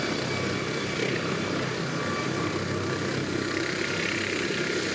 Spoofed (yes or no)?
no